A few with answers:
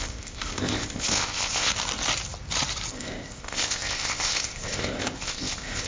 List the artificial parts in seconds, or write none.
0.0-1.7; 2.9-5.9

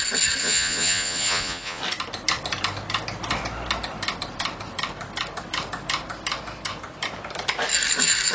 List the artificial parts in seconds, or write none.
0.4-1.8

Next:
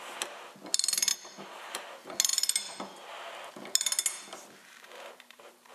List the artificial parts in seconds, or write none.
1.1-1.9; 4.6-5.7

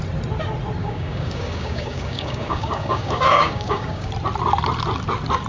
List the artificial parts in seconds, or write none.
0.8-4.1

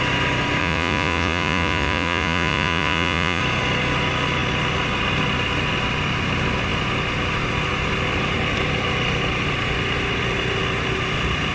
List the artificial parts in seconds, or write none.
0.6-3.4

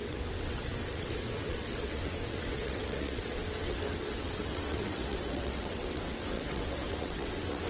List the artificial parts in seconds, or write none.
0.0-7.7